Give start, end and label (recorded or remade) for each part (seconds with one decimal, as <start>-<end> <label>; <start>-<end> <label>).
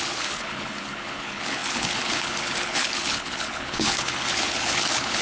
0.0-5.2 remade